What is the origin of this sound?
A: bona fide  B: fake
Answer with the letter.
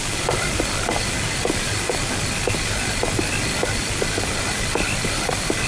A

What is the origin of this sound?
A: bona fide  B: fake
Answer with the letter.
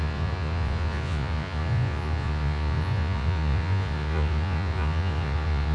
B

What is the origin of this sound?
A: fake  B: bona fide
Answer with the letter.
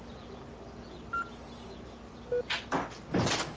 B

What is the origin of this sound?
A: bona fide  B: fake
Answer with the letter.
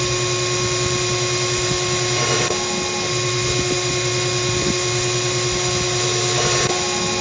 A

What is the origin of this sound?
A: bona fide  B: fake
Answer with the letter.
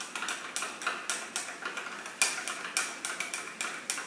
A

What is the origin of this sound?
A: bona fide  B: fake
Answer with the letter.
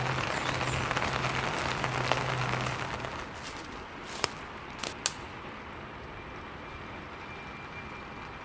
A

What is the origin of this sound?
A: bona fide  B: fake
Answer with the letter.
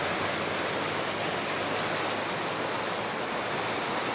A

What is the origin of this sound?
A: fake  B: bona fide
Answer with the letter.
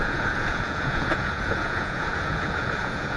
A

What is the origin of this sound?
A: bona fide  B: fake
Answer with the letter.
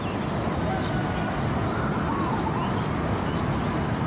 A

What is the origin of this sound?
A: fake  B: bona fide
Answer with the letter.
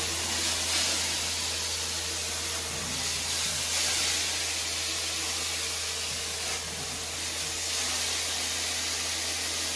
B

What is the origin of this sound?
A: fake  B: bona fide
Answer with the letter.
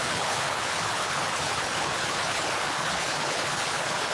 A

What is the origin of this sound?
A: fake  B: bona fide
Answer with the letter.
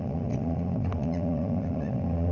A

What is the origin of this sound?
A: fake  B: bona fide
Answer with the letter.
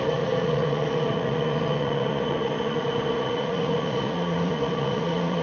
A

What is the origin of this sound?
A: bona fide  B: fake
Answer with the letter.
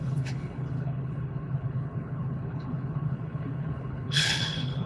B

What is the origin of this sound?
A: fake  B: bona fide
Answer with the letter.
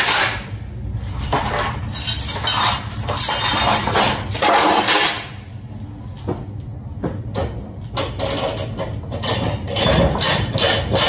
B